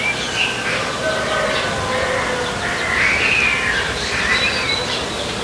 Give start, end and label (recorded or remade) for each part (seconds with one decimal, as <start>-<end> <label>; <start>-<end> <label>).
0.0-5.4 recorded